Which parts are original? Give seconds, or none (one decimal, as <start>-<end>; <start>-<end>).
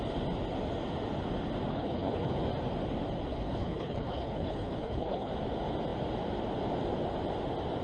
0.0-1.7; 2.3-3.3; 5.3-7.8